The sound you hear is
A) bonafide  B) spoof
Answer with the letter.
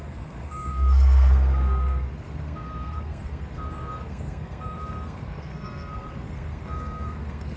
B